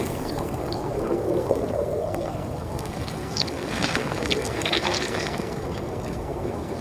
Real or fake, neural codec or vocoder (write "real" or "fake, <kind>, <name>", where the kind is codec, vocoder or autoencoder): fake, codec, SNAC